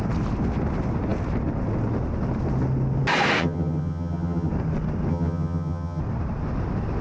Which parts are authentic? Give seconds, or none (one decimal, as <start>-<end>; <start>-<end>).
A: 0.0-3.4; 4.5-5.1; 6.0-7.0